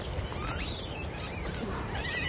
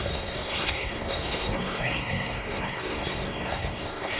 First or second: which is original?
first